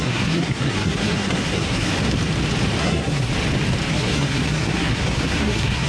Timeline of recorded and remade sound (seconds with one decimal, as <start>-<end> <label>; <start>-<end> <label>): 0.0-1.9 remade; 1.9-2.8 recorded; 2.8-3.3 remade; 3.3-3.9 recorded; 3.9-5.9 remade